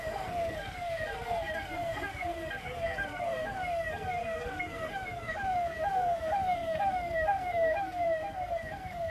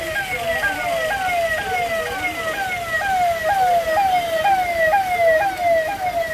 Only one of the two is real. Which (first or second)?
second